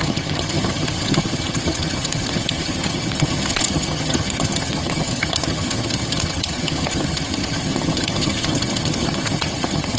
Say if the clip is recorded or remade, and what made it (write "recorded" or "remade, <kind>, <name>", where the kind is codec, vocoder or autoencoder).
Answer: remade, vocoder, HiFi-GAN